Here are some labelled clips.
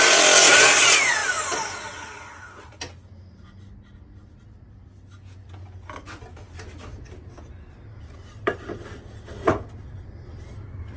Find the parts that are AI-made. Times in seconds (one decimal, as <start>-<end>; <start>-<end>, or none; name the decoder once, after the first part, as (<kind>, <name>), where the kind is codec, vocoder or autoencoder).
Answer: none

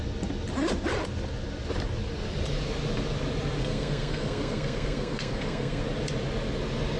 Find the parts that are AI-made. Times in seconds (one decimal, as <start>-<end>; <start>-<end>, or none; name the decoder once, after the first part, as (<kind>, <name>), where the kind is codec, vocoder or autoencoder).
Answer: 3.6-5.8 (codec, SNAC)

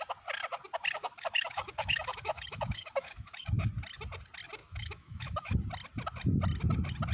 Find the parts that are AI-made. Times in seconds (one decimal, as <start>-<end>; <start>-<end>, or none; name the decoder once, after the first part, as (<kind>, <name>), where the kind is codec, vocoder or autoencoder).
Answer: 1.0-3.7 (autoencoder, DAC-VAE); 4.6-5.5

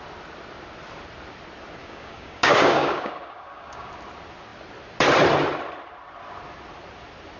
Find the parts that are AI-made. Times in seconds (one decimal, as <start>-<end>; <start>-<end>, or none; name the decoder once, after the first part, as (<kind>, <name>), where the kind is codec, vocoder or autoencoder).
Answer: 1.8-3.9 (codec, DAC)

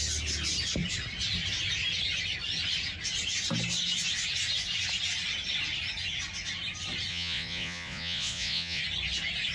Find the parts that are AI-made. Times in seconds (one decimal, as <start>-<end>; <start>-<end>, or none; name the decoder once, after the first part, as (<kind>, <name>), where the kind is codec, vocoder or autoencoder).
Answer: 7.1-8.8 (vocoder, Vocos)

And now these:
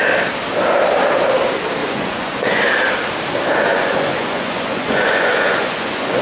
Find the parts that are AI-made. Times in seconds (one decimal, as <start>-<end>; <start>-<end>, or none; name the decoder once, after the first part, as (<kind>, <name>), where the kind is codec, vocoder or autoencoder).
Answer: 1.8-2.6 (vocoder, Vocos); 3.7-6.2

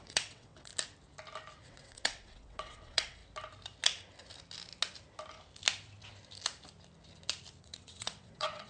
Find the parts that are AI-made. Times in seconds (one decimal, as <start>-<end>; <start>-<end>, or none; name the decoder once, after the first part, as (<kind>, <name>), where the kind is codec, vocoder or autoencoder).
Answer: 0.0-0.7 (vocoder, WaveNeXt); 1.6-3.2; 7.6-8.7

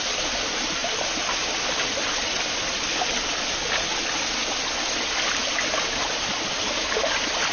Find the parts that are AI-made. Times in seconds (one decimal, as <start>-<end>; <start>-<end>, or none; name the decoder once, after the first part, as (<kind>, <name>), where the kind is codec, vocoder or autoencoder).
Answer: 0.0-4.4 (vocoder, BigVGAN v2); 6.6-7.5